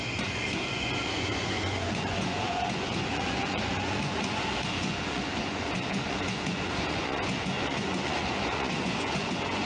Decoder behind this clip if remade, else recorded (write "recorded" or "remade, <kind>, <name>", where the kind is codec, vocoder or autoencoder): remade, vocoder, Vocos